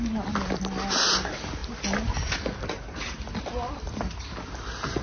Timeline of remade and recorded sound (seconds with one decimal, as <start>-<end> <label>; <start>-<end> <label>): 0.0-5.0 recorded